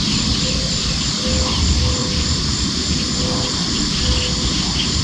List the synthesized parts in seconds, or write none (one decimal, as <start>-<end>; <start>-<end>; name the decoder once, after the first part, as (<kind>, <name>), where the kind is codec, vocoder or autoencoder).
2.0-2.9 (vocoder, BigVGAN v2)